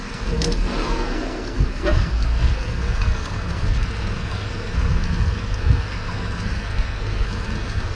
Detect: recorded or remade remade